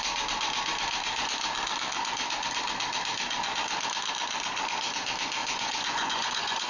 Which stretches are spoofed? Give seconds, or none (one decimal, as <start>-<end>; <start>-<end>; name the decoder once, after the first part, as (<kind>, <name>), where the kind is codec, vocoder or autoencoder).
5.4-6.7 (vocoder, Vocos)